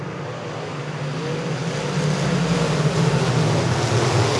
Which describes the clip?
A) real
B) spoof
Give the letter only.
A